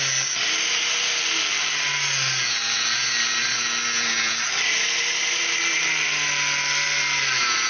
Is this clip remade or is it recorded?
recorded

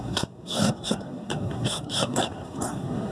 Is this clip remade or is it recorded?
remade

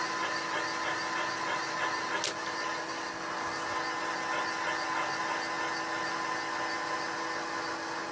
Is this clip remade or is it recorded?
recorded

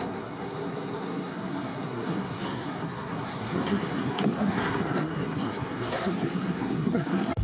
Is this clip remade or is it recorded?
remade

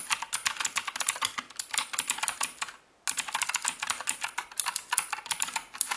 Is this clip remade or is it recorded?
recorded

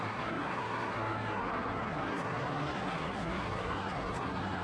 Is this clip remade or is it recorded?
remade